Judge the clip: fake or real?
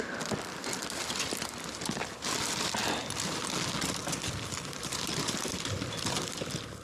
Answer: real